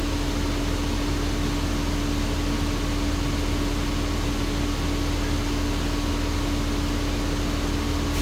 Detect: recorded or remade recorded